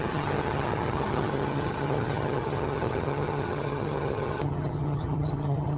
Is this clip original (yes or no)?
no